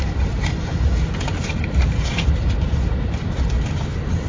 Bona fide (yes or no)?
no